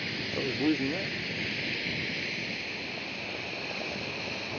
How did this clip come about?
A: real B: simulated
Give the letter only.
A